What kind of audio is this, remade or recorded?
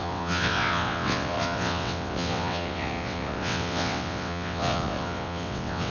remade